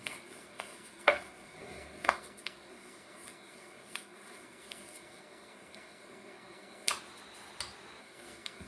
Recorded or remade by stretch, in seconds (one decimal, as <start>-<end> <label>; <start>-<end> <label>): 0.0-6.9 remade; 6.9-8.0 recorded; 8.0-8.7 remade